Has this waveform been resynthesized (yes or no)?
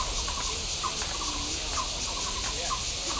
no